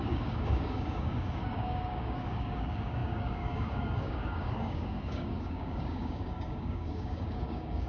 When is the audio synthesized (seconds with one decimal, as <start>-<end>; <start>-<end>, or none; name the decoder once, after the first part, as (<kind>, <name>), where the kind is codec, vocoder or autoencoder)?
0.0-7.9 (codec, DAC)